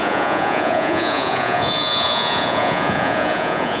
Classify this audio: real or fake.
fake